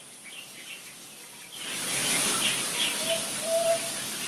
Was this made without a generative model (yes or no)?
yes